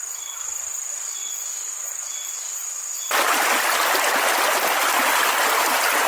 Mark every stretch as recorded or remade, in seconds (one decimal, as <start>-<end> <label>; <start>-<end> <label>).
0.0-6.1 recorded